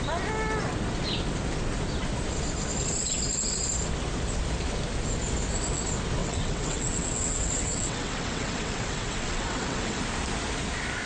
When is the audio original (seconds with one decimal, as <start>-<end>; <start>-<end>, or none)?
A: 0.0-6.2; 10.0-11.1